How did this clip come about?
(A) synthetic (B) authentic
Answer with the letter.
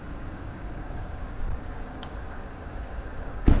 A